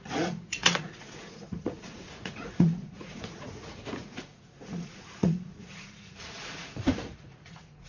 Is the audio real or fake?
fake